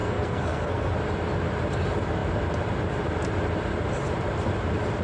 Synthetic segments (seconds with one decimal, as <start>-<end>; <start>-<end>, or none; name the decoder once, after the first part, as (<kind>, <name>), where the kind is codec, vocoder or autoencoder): 0.0-0.9 (codec, SNAC)